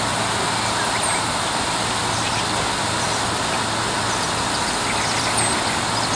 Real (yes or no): yes